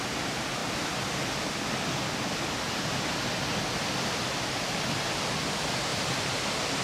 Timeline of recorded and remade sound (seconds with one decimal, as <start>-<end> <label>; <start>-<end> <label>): 0.0-5.9 recorded; 5.9-6.8 remade